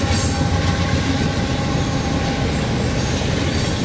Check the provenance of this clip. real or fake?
real